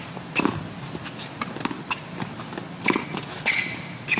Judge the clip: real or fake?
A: real